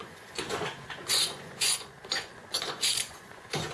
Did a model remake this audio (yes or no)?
yes